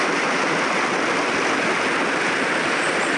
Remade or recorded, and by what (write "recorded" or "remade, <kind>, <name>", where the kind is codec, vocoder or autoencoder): recorded